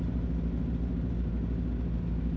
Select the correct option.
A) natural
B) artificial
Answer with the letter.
A